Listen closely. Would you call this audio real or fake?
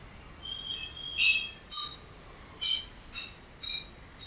real